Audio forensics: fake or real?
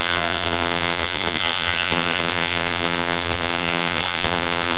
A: fake